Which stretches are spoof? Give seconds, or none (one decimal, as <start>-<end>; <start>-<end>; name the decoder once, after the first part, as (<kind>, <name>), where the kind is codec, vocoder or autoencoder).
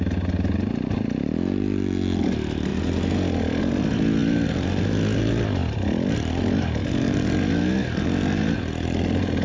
4.2-4.8 (vocoder, BigVGAN v2); 5.6-6.3